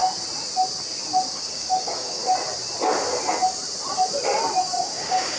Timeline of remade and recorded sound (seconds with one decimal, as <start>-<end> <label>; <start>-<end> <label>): 0.0-1.3 recorded; 1.3-2.2 remade; 2.2-4.6 recorded; 4.6-5.4 remade